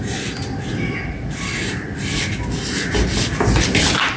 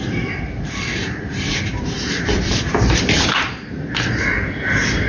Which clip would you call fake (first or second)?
second